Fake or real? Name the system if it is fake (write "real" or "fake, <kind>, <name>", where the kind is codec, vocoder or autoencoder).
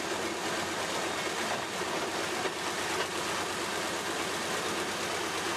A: real